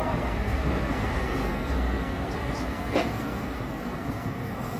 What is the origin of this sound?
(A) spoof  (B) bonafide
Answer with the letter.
A